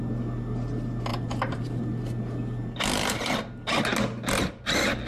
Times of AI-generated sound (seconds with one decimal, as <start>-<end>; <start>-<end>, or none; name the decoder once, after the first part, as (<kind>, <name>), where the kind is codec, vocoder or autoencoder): 1.1-1.8 (vocoder, BigVGAN v2)